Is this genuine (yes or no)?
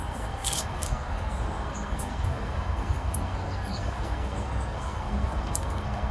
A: no